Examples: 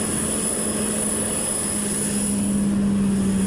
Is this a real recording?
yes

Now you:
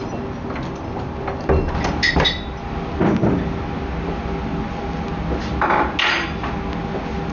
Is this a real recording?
yes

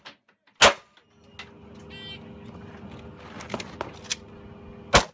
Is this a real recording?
yes